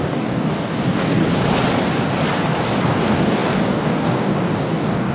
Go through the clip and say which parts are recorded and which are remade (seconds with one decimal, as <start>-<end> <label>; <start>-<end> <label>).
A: 0.0-1.2 remade; 1.2-2.9 recorded; 2.9-5.1 remade